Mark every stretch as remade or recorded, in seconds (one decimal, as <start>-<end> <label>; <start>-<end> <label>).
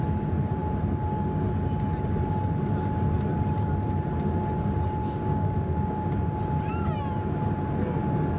0.0-5.0 recorded; 5.0-6.1 remade; 6.1-8.4 recorded